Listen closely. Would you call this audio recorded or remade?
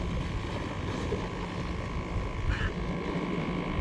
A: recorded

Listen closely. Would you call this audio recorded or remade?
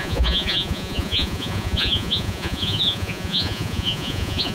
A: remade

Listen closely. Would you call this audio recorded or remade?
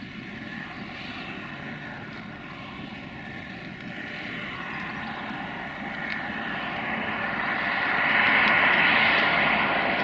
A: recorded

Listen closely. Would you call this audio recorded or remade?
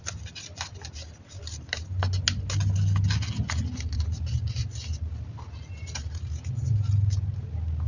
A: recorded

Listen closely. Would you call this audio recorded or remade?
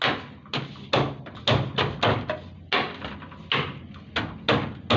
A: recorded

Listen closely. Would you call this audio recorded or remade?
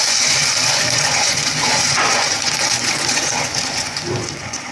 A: remade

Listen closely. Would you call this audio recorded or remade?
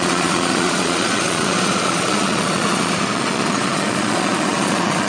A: remade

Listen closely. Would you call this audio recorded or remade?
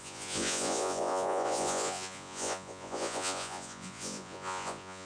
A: remade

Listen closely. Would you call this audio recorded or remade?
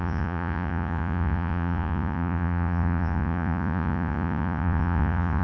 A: remade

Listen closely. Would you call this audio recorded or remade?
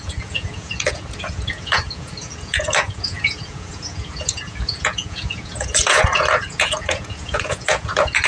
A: remade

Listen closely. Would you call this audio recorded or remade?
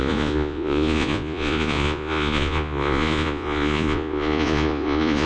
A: remade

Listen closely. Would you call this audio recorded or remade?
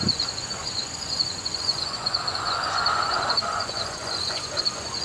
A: remade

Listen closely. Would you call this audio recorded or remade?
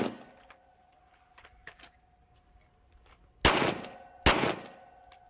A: recorded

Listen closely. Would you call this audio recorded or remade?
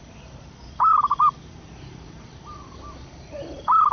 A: recorded